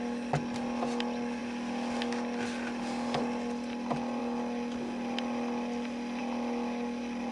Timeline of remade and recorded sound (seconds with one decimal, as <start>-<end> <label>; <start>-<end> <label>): 0.0-7.3 recorded